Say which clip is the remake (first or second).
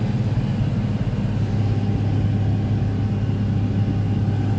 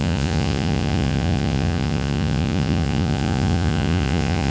second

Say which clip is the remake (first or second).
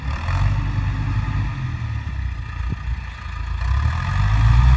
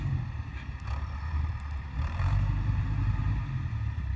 second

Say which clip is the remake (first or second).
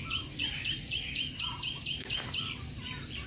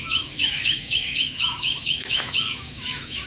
second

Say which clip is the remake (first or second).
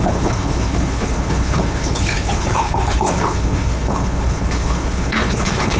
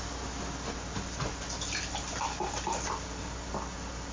first